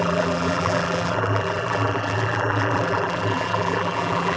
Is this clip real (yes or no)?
no